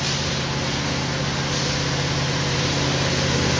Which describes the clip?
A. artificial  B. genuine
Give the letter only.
B